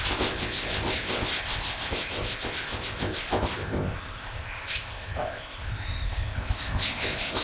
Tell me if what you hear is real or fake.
fake